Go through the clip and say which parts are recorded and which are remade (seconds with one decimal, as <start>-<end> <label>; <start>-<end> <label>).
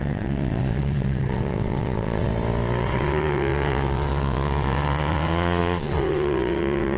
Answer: 0.0-2.3 remade; 2.3-2.8 recorded; 2.8-7.0 remade